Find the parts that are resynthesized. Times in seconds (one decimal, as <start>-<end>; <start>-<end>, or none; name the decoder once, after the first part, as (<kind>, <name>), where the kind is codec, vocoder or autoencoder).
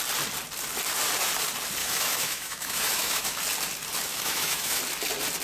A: 1.8-3.4 (autoencoder, DAC-VAE); 4.1-4.8